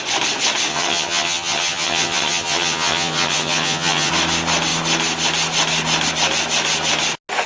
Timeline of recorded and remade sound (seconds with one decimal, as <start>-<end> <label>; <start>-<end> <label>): 0.0-0.7 recorded; 0.7-4.1 remade; 4.1-7.5 recorded